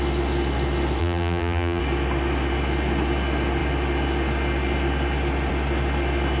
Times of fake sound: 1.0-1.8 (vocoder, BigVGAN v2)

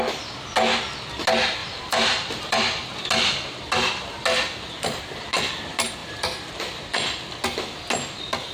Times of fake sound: 1.6-2.6 (vocoder, BigVGAN v2); 6.0-6.5

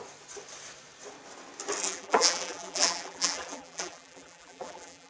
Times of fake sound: 1.8-5.1 (vocoder, BigVGAN v2)

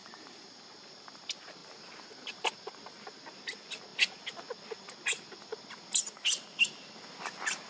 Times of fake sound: 0.0-0.6 (vocoder, BigVGAN v2); 1.6-2.5